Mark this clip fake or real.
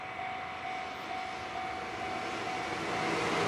real